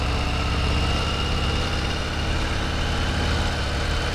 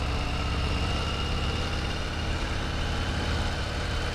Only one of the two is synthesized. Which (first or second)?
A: second